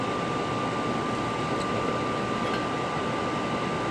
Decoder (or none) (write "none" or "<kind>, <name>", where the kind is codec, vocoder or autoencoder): none